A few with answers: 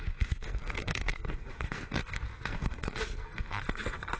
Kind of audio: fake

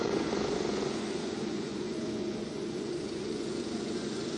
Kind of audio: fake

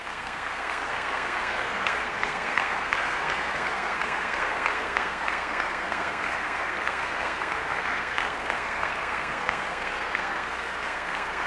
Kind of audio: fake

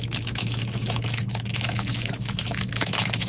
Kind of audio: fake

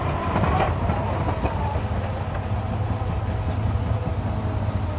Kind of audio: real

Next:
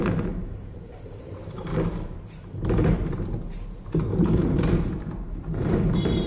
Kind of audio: fake